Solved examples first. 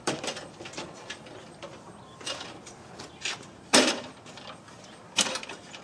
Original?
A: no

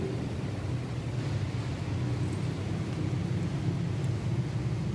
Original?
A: yes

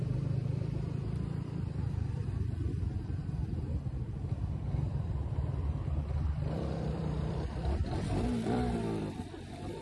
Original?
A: no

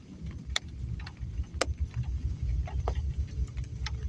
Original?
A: yes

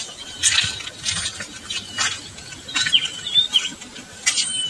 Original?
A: yes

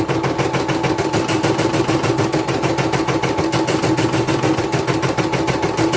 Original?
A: yes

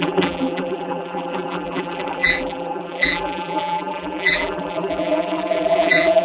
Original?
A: no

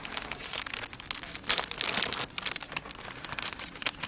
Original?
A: yes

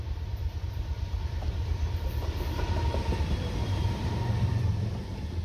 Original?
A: no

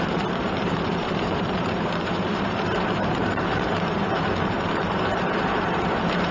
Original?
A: no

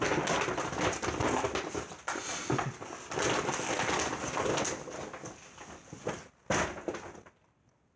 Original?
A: yes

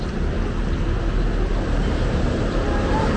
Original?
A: yes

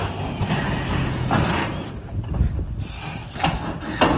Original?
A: yes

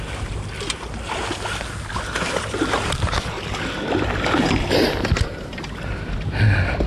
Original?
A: yes